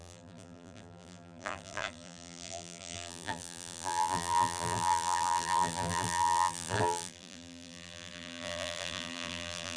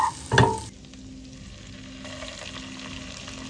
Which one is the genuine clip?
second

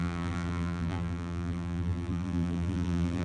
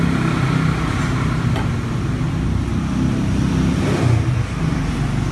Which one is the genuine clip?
second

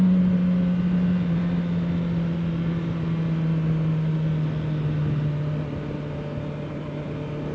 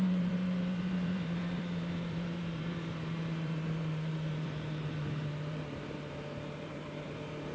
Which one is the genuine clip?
first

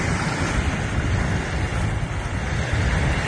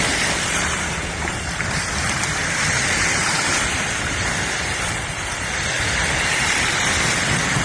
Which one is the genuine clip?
first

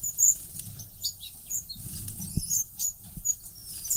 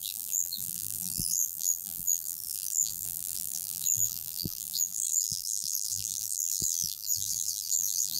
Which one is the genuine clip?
first